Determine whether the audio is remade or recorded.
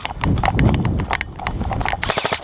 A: recorded